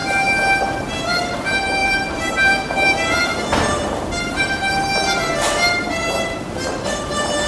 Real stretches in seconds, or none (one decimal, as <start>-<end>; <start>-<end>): 0.6-1.8; 4.4-7.5